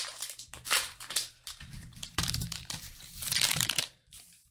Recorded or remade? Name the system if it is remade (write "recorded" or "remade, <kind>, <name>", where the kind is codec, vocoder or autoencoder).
remade, vocoder, BigVGAN v2